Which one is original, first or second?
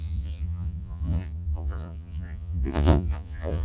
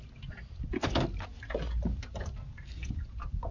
second